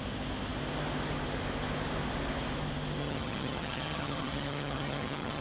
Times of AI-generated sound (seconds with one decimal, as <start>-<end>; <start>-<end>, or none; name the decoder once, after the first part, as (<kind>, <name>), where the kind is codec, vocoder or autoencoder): 3.0-5.4 (vocoder, HiFi-GAN)